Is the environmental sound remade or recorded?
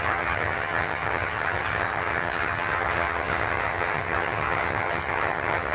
remade